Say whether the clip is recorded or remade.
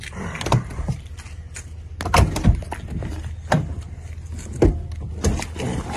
recorded